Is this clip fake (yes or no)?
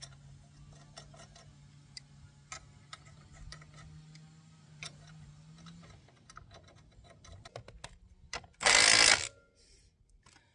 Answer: no